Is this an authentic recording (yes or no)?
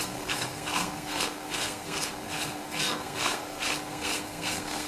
no